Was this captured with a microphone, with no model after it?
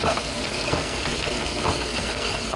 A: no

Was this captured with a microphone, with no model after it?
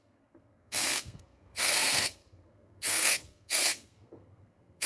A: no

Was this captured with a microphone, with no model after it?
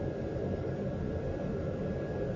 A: yes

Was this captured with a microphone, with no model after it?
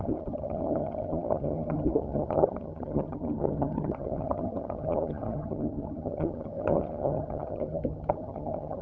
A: no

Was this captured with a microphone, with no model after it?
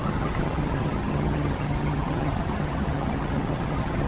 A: no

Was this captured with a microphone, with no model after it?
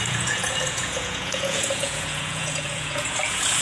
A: no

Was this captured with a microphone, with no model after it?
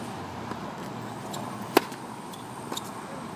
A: yes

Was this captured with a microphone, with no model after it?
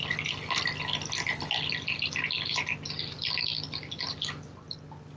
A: yes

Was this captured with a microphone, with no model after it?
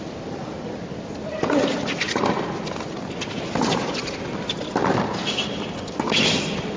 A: yes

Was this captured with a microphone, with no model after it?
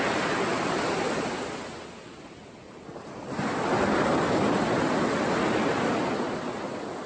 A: yes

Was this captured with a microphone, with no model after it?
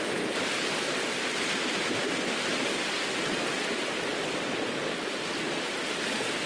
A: yes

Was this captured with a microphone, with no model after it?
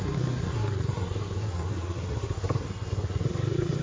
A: no